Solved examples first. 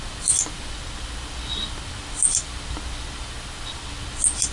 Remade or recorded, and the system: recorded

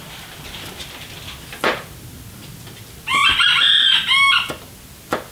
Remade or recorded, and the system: recorded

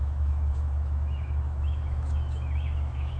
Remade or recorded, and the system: remade, autoencoder, DAC-VAE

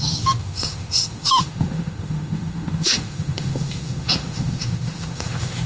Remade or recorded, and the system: remade, autoencoder, DAC-VAE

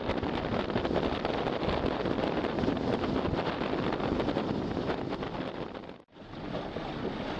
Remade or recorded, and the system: recorded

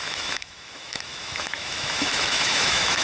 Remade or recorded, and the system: remade, autoencoder, DAC-VAE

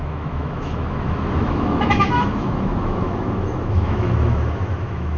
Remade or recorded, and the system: remade, autoencoder, DAC-VAE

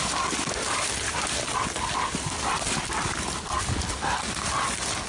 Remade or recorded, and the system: recorded